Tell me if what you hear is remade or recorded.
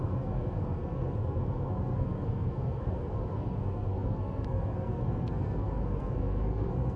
remade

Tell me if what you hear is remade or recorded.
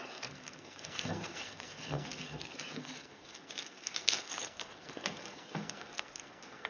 remade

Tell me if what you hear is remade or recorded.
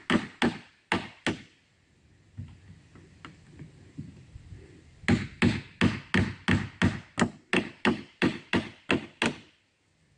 recorded